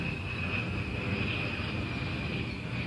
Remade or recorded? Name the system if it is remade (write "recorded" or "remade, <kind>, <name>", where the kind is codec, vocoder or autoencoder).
recorded